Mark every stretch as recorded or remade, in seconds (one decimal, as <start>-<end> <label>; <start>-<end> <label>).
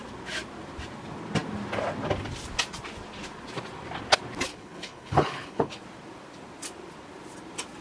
0.0-4.5 recorded; 4.5-5.8 remade; 5.8-7.8 recorded